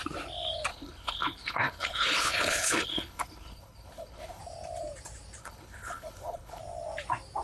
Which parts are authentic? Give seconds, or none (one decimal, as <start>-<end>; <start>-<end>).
0.0-0.7; 4.4-5.4; 6.6-7.4